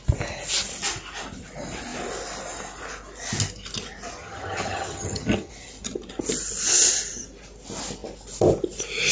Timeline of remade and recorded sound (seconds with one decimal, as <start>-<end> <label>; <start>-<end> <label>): 0.0-4.2 recorded; 4.2-5.5 remade; 5.5-9.1 recorded